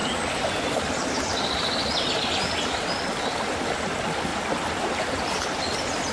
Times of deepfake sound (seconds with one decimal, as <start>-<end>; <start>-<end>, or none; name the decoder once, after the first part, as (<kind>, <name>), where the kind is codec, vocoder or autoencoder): none